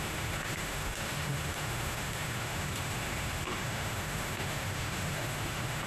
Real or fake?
fake